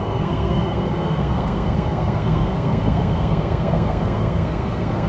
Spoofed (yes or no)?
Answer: yes